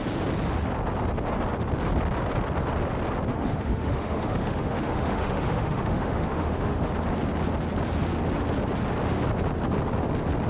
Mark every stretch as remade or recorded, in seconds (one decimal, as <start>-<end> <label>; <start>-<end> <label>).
0.0-3.3 recorded; 3.3-6.9 remade; 6.9-10.5 recorded